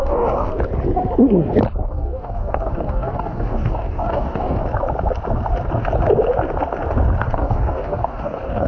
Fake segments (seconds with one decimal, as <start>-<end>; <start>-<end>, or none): 0.0-0.5; 1.8-4.6; 7.2-8.7